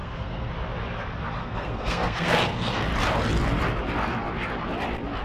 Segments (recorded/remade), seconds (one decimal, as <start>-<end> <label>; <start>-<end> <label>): 0.0-0.5 remade; 0.5-1.4 recorded; 1.4-2.9 remade; 2.9-5.2 recorded